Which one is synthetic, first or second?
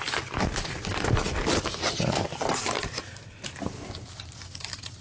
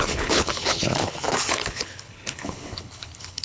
second